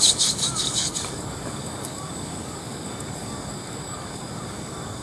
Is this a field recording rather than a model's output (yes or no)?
no